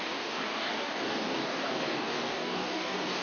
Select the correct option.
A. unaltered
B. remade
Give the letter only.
B